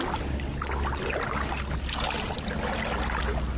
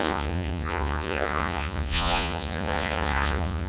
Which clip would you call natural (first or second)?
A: first